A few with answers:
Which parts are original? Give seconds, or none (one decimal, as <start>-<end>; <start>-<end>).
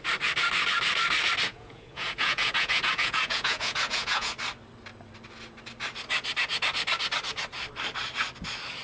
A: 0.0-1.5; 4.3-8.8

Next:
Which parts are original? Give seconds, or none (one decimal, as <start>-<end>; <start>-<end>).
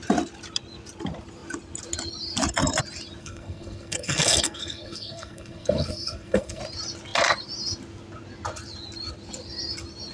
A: 0.0-3.2; 6.6-10.1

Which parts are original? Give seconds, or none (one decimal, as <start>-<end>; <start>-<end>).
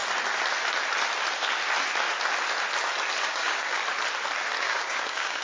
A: 0.0-3.2; 3.8-4.6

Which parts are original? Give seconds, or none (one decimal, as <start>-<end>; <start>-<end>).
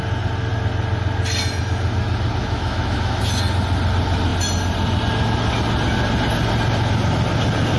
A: 0.0-2.4; 3.2-7.8